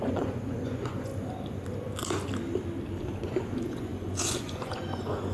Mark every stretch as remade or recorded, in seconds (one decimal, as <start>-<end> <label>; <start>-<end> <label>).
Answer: 0.0-1.1 remade; 1.1-3.0 recorded; 3.0-5.3 remade